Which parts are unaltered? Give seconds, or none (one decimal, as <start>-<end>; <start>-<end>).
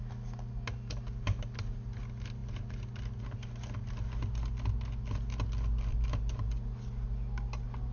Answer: 0.0-7.9